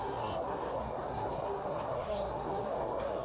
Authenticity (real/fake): fake